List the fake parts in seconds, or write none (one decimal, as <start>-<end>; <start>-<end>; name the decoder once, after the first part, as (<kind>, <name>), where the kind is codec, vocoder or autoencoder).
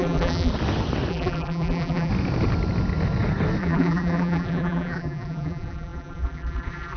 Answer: 0.0-0.5 (vocoder, BigVGAN v2); 1.1-2.1; 3.6-7.0